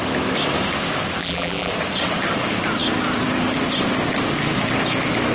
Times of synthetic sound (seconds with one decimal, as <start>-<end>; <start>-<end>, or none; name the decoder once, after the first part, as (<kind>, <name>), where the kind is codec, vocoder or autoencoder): 1.2-1.7 (vocoder, BigVGAN v2)